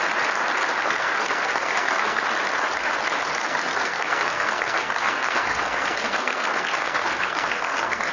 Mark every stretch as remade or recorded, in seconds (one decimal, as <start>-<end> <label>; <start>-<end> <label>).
0.0-0.8 recorded; 0.8-2.2 remade; 2.2-3.4 recorded; 3.4-8.1 remade